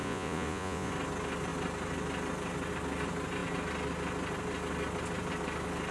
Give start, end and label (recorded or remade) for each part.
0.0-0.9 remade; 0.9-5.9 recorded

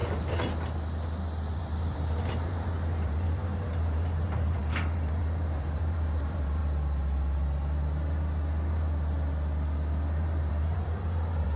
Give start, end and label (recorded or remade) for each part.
0.0-1.6 recorded; 1.6-6.6 remade; 6.6-10.5 recorded; 10.5-11.6 remade

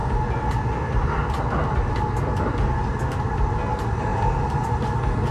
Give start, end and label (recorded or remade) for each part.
0.0-5.3 recorded

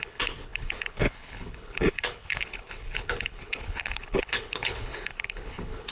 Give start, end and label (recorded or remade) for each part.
0.0-5.9 remade

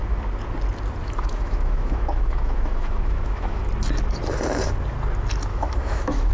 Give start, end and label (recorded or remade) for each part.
0.0-1.0 recorded; 1.0-3.6 remade; 3.6-5.5 recorded; 5.5-6.3 remade

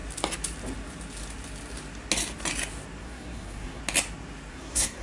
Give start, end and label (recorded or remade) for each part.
0.0-3.0 recorded; 3.0-3.8 remade; 3.8-4.5 recorded; 4.5-5.0 remade

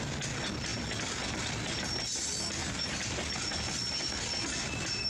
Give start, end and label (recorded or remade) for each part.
0.0-2.6 recorded; 2.6-3.2 remade; 3.2-5.1 recorded